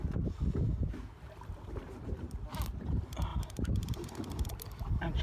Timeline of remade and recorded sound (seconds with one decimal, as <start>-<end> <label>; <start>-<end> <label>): 0.0-3.3 recorded; 3.3-4.6 remade; 4.6-5.2 recorded